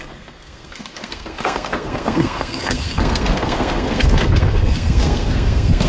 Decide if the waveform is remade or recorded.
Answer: remade